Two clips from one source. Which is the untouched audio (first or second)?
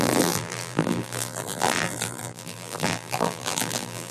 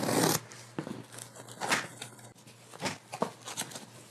second